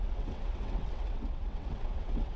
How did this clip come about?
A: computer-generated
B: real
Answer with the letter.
A